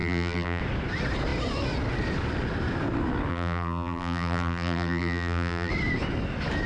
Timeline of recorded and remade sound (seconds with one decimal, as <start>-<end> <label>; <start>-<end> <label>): 0.0-0.6 remade; 0.6-3.3 recorded; 3.3-5.7 remade; 5.7-6.7 recorded